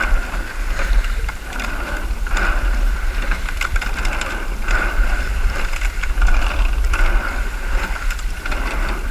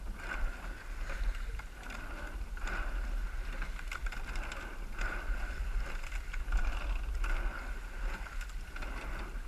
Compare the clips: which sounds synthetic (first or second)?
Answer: first